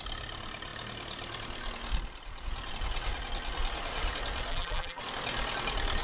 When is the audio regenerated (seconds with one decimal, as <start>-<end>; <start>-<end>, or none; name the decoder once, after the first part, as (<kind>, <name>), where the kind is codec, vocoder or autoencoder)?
4.5-5.0 (vocoder, BigVGAN v2)